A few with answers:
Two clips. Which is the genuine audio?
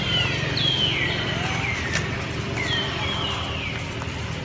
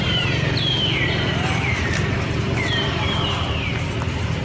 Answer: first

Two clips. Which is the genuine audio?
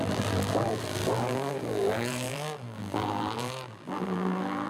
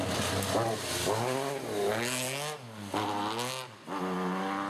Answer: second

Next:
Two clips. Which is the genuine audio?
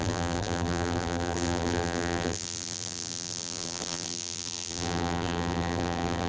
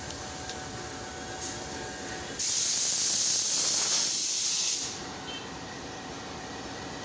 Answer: second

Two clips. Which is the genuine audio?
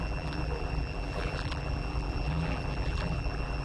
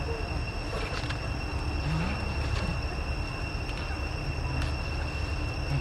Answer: second